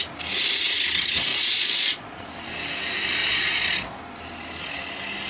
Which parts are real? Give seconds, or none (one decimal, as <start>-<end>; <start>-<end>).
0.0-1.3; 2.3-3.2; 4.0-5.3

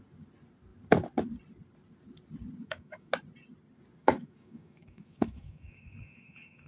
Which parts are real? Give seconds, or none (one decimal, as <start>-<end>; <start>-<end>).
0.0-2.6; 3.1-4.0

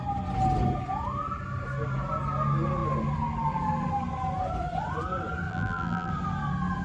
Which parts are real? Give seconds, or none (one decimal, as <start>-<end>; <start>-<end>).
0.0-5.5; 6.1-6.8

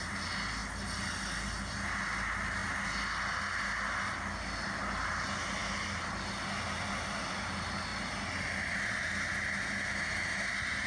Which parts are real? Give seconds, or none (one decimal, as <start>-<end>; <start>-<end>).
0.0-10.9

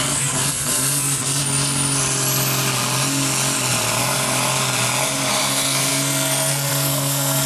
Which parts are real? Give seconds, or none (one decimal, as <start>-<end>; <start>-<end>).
1.4-5.3

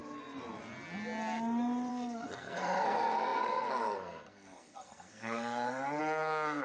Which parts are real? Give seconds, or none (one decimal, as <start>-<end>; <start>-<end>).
0.0-1.9